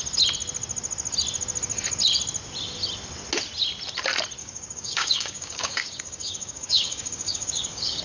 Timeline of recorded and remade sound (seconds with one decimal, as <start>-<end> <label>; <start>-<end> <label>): 0.0-4.4 recorded; 4.4-8.0 remade

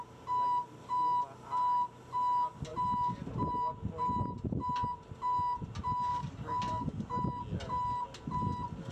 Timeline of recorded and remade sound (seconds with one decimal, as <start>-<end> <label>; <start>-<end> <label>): 0.0-6.1 recorded; 6.1-7.2 remade; 7.2-8.9 recorded

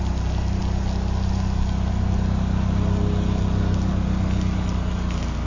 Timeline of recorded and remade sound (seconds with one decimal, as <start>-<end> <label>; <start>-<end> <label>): 0.0-5.5 recorded

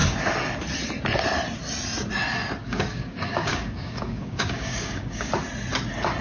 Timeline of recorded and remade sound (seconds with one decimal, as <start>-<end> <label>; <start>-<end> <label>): 0.0-2.6 recorded; 2.6-5.3 remade; 5.3-6.2 recorded

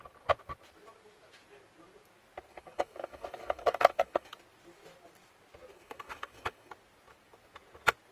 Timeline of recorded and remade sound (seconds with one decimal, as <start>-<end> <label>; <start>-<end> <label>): 0.0-2.5 recorded; 2.5-4.4 remade; 4.4-5.7 recorded; 5.7-6.7 remade; 6.7-8.1 recorded